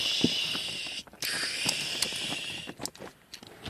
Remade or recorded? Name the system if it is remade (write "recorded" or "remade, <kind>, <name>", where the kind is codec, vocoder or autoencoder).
recorded